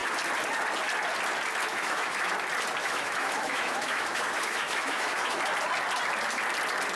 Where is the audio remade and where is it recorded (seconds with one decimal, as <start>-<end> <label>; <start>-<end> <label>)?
0.0-1.7 recorded; 1.7-2.3 remade; 2.3-2.8 recorded; 2.8-5.4 remade; 5.4-7.0 recorded